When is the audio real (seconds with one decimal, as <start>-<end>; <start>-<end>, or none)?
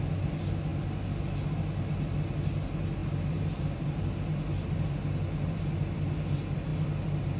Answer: 0.0-7.4